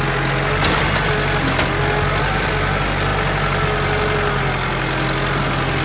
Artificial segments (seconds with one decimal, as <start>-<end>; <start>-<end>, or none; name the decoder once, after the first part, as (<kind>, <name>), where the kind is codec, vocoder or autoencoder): none